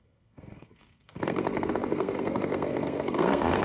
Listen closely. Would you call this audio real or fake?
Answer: fake